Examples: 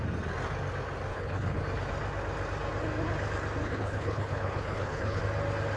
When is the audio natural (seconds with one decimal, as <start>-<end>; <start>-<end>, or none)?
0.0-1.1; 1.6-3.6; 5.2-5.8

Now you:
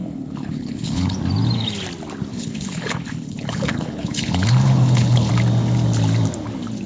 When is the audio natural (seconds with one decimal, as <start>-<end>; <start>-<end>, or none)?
1.2-2.3; 5.3-6.9

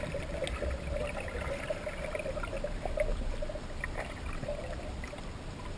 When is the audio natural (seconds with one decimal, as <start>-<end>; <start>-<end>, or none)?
0.0-5.8